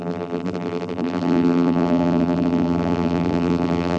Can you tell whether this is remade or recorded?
remade